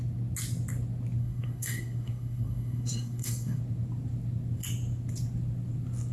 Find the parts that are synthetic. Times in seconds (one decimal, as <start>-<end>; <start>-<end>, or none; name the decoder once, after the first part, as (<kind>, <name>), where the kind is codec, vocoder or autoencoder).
1.2-3.6 (codec, SNAC)